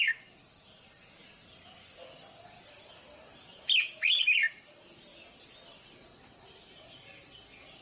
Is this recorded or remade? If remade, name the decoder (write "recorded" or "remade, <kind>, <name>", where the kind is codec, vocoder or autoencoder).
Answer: recorded